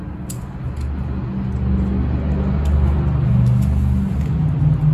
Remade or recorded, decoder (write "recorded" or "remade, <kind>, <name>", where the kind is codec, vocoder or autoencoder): recorded